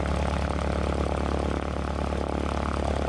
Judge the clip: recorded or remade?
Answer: recorded